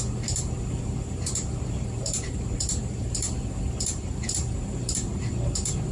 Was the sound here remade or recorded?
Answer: remade